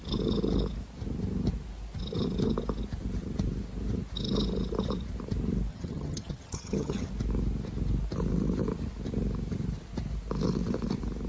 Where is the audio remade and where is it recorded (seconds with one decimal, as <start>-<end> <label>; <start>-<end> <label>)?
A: 0.0-5.7 recorded; 5.7-7.1 remade; 7.1-11.3 recorded